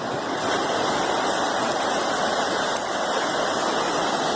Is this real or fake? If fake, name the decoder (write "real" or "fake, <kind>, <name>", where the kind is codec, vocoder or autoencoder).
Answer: real